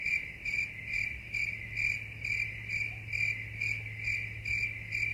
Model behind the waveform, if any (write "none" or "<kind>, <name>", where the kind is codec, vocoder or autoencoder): none